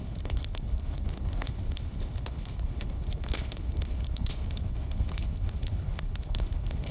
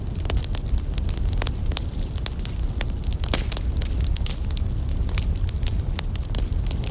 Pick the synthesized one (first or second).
first